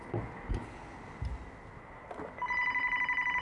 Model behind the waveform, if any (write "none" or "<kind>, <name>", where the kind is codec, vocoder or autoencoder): none